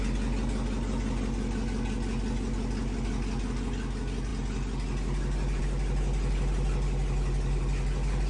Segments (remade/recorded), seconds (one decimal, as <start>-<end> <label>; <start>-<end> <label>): 0.0-8.3 recorded